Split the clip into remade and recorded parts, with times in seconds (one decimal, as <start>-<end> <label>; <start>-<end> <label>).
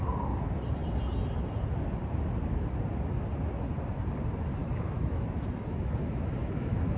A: 0.0-4.6 recorded; 4.6-7.0 remade